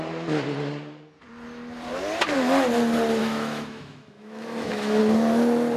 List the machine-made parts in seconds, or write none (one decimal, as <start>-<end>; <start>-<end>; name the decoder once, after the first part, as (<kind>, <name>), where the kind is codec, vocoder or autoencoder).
3.2-5.0 (autoencoder, DAC-VAE)